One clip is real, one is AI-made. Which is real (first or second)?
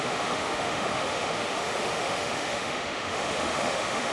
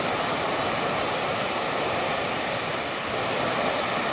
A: second